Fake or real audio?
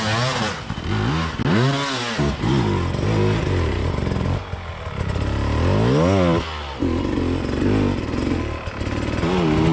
real